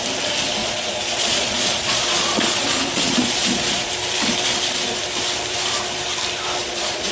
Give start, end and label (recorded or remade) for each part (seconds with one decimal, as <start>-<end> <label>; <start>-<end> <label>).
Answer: 0.0-0.6 recorded; 0.6-3.9 remade; 3.9-6.6 recorded; 6.6-7.1 remade